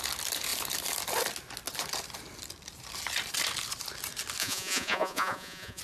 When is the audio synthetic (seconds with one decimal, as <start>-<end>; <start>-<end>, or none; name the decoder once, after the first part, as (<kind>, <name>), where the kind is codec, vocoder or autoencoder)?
4.4-5.8 (vocoder, Vocos)